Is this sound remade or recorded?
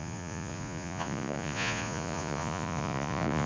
remade